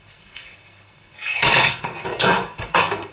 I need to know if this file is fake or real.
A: fake